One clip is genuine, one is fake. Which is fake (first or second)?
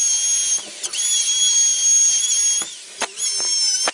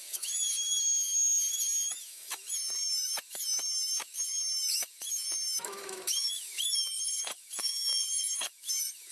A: second